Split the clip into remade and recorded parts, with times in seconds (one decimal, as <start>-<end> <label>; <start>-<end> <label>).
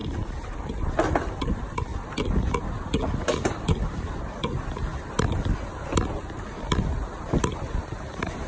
0.0-1.4 recorded; 1.4-1.9 remade; 1.9-7.0 recorded; 7.0-8.5 remade